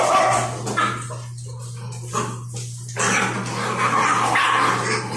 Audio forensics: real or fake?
real